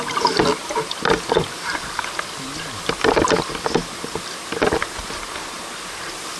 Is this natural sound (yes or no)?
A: yes